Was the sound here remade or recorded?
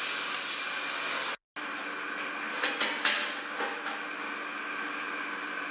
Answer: recorded